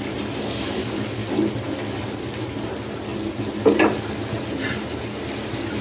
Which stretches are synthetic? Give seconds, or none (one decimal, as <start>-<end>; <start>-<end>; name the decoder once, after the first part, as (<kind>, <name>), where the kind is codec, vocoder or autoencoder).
none